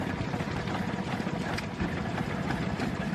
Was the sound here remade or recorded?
recorded